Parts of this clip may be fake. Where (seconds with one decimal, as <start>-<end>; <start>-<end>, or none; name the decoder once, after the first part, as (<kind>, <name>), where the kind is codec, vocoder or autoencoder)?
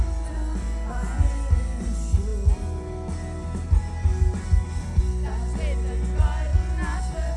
none